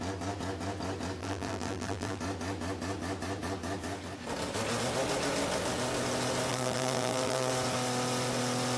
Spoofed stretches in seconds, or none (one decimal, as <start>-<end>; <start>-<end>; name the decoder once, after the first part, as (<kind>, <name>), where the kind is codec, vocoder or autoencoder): 1.2-2.2 (vocoder, BigVGAN v2); 6.5-7.5